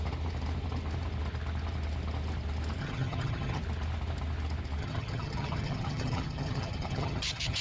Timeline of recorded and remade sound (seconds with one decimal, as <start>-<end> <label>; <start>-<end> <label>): 0.0-2.8 recorded; 2.8-3.6 remade; 3.6-4.8 recorded; 4.8-7.6 remade